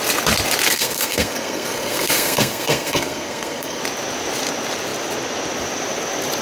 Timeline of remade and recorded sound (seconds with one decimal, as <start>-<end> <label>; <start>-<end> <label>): 0.0-0.7 recorded; 0.7-3.8 remade; 3.8-6.4 recorded